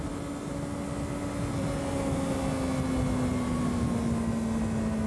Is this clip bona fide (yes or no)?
yes